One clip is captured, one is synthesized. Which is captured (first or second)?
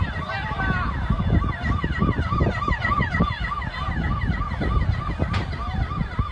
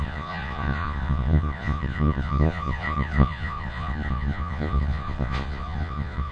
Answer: first